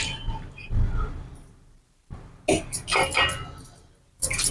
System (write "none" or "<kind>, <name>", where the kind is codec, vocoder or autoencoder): none